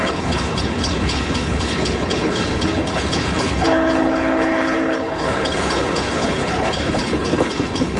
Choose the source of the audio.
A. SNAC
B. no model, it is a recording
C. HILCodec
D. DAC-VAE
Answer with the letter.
C